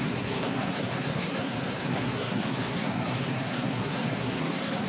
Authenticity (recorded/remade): remade